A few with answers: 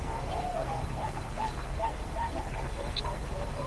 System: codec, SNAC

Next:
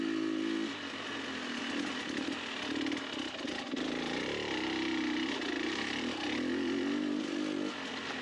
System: none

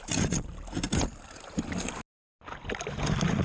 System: none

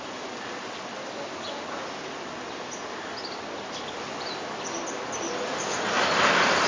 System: none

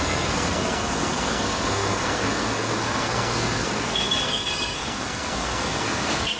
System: codec, SNAC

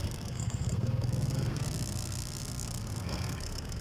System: codec, SNAC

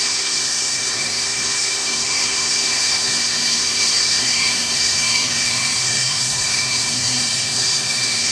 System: codec, SNAC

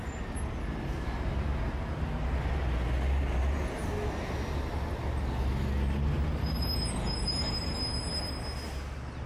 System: none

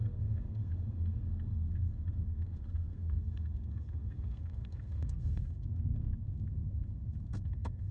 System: codec, SNAC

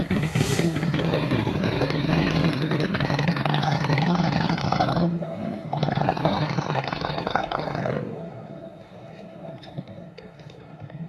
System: codec, SNAC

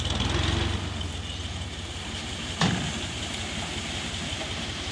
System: none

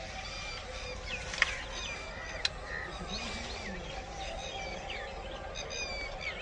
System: none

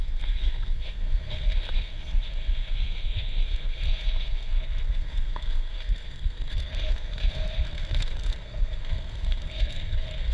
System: codec, SNAC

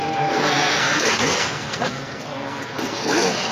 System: codec, SNAC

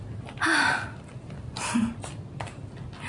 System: none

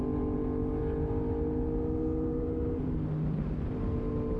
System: none